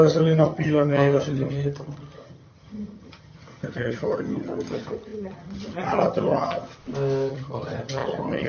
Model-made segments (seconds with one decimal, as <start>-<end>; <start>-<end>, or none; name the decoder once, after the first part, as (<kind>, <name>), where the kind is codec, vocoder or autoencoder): 0.0-6.8 (vocoder, HiFi-GAN); 7.3-8.5